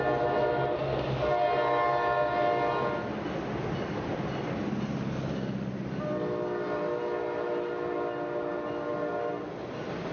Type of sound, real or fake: real